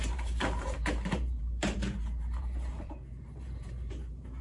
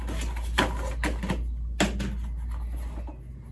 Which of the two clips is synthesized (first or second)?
first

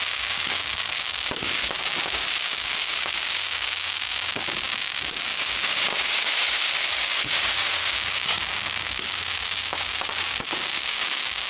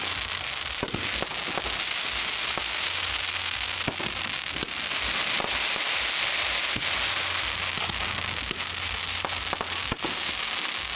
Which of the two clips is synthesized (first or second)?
first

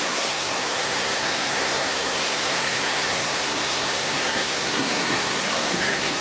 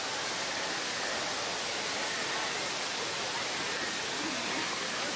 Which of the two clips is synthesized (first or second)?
first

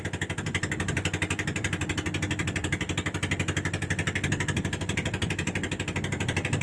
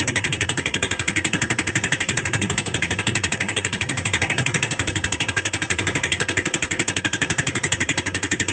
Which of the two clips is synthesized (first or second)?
second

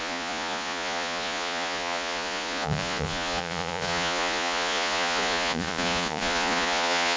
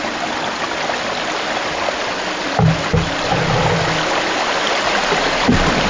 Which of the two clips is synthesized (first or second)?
first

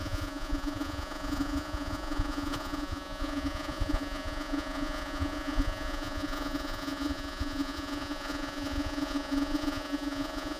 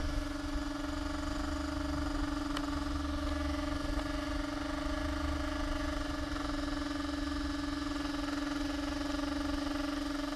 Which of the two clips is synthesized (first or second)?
first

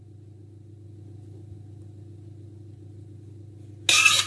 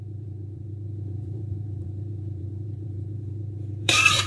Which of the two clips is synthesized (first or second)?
second